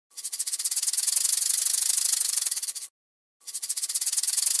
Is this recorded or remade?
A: recorded